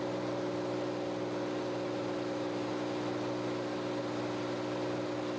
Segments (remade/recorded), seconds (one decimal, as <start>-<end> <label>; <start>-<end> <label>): 0.0-5.4 recorded